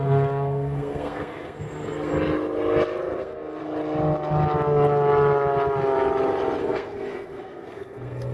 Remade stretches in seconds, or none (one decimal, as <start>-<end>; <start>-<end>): 0.0-2.1; 3.2-3.6; 6.6-8.3